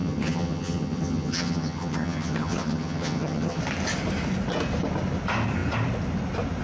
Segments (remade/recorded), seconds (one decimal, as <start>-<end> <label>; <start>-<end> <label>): 0.0-3.6 remade; 3.6-6.6 recorded